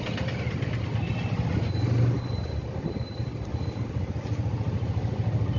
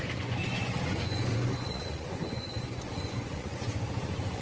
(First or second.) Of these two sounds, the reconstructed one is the second